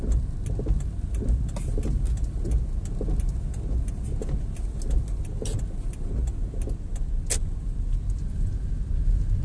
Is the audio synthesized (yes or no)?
no